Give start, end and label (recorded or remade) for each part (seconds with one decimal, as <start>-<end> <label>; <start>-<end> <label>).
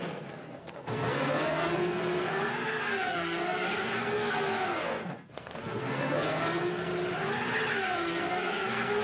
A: 0.0-6.9 remade; 6.9-7.7 recorded; 7.7-9.0 remade